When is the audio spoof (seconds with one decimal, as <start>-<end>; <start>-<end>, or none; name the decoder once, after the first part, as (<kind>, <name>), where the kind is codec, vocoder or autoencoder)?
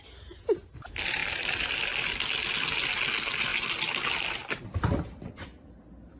none